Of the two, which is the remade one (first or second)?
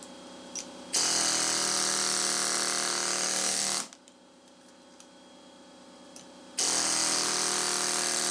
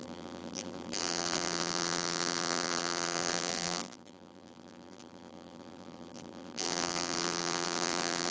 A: second